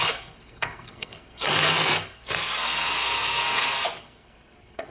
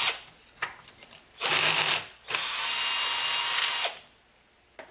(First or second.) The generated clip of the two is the first